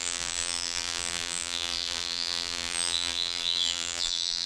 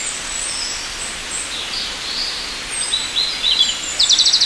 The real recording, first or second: second